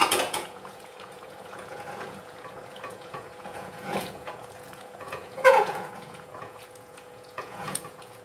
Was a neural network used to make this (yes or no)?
yes